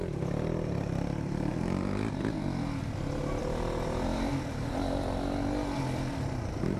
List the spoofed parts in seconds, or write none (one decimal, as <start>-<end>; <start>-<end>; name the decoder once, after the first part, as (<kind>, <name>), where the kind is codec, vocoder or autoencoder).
none